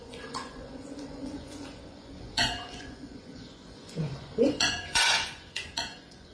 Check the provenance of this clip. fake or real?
fake